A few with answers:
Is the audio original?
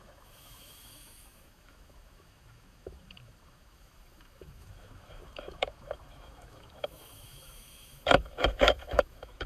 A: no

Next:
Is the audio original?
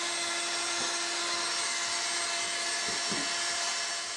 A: yes